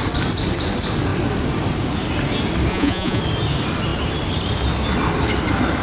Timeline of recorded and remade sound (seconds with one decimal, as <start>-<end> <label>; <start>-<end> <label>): 0.0-2.7 recorded; 2.7-3.2 remade; 3.2-5.8 recorded